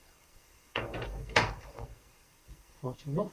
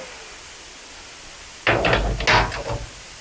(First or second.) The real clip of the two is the second